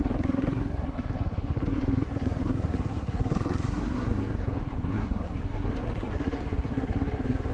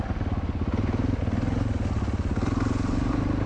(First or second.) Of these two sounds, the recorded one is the second